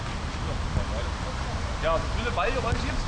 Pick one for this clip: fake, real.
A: real